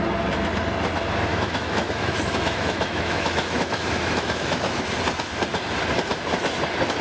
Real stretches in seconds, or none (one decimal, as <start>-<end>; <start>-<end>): 0.0-1.3; 4.8-7.0